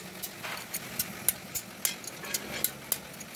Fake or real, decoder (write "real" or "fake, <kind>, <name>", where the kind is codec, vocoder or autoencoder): real